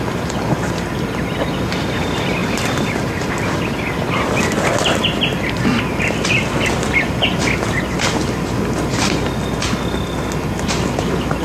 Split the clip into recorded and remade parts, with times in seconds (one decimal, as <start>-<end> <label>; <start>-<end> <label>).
0.0-2.4 recorded; 2.4-3.4 remade; 3.4-11.4 recorded